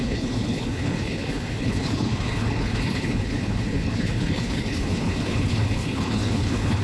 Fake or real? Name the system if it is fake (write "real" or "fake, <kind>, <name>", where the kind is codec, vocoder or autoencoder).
fake, codec, HILCodec